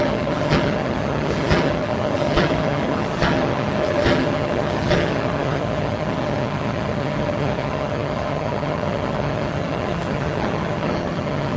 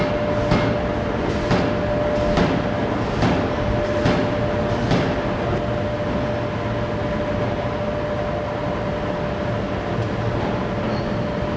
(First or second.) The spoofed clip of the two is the first